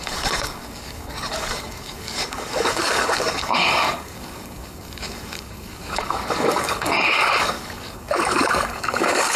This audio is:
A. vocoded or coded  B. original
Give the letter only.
A